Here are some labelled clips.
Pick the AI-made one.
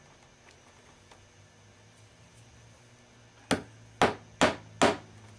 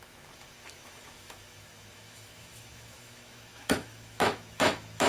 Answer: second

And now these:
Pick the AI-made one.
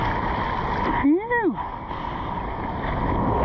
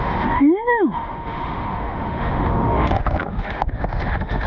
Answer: second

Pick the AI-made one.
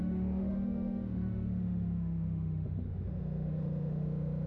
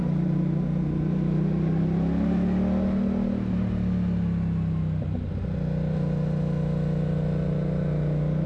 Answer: first